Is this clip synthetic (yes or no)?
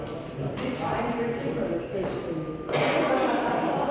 no